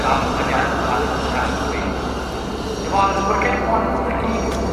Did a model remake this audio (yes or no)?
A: no